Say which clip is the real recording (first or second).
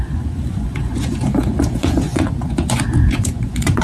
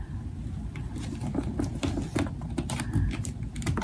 second